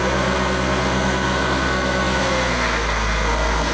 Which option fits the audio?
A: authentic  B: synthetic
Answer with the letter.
B